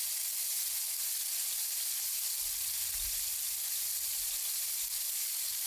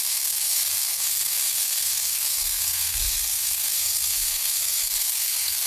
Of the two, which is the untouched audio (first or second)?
first